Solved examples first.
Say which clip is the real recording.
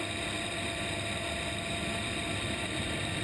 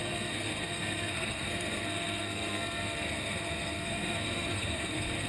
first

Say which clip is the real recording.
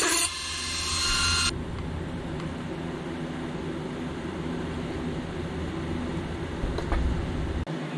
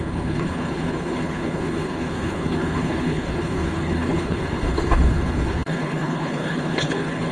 first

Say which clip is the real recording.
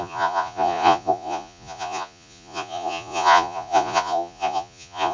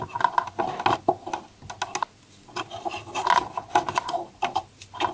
second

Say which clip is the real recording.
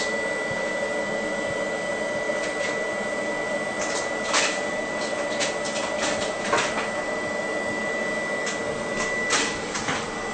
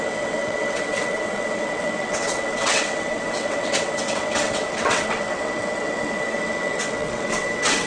first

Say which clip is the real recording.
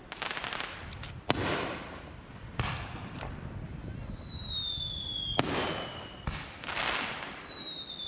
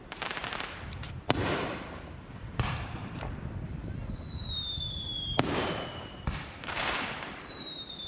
first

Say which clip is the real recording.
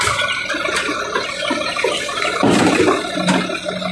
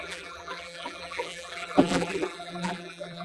first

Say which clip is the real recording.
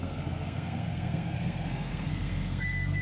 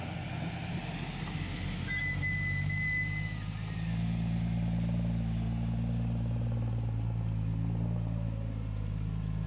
second